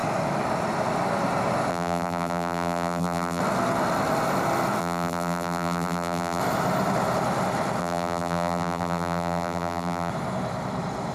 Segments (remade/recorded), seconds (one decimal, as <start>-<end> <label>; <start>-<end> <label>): 0.0-1.7 recorded; 1.7-3.4 remade; 3.4-4.8 recorded; 4.8-6.4 remade; 6.4-7.8 recorded; 7.8-10.1 remade; 10.1-11.1 recorded